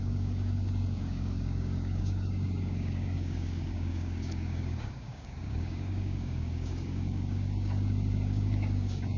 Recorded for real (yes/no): no